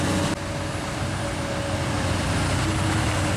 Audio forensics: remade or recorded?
recorded